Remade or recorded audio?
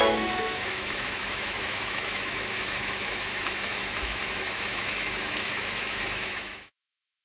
remade